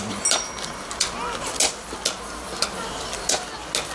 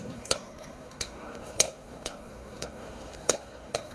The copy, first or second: second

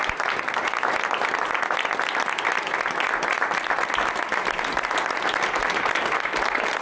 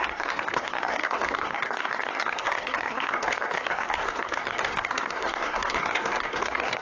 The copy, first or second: second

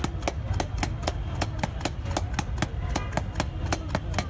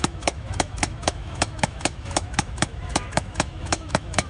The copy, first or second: second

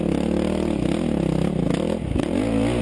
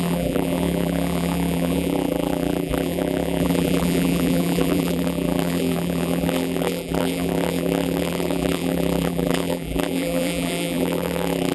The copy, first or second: second